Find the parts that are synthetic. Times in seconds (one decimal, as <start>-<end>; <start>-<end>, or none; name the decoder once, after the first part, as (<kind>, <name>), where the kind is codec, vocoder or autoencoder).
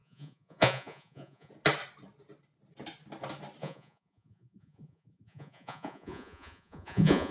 0.0-1.5 (vocoder, Vocos); 3.6-7.3